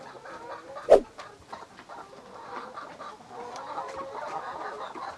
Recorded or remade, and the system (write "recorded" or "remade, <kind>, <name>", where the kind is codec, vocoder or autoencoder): recorded